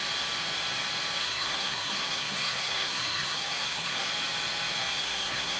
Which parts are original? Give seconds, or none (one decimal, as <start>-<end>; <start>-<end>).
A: 0.0-1.2; 4.1-4.8